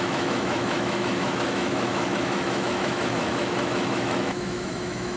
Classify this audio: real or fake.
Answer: fake